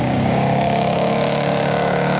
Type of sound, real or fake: fake